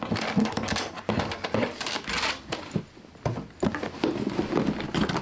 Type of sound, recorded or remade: recorded